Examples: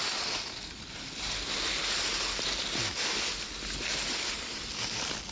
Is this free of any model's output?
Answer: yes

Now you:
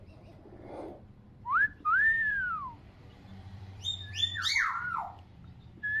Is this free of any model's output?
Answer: no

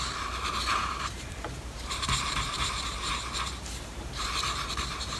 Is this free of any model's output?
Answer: no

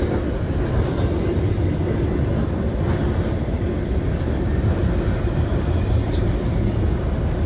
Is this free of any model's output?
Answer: yes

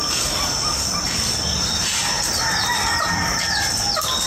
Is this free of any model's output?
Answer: yes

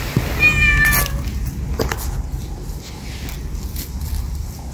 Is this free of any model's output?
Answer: yes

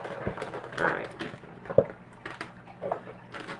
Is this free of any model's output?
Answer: yes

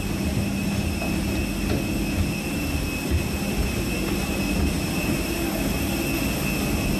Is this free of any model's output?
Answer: yes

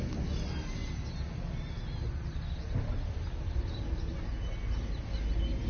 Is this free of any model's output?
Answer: yes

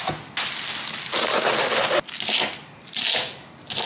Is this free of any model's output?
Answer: yes